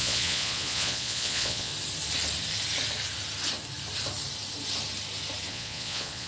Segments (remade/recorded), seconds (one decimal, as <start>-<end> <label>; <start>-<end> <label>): 0.0-1.7 remade; 1.7-5.5 recorded; 5.5-6.3 remade